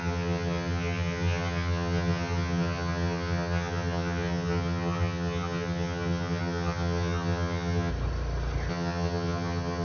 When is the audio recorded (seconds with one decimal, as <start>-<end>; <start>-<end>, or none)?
7.9-8.7